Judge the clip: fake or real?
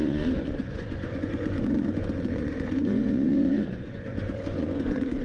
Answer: fake